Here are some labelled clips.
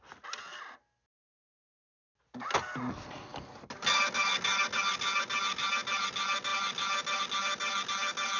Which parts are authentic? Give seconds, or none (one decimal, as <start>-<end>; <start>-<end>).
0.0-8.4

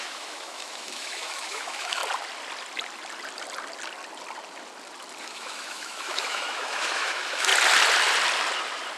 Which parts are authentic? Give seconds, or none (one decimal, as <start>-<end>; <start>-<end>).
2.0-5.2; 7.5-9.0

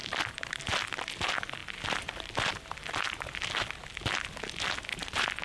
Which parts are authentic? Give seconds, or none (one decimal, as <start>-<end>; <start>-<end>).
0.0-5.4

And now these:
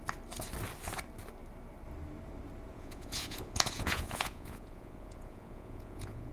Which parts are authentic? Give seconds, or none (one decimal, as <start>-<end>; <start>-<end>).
0.0-2.7